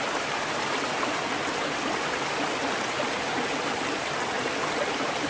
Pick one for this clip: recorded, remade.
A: recorded